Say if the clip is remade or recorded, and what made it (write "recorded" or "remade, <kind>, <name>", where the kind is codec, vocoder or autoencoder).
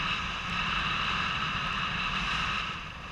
remade, vocoder, BigVGAN v2